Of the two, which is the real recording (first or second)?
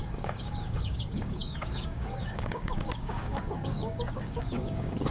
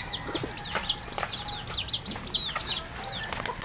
second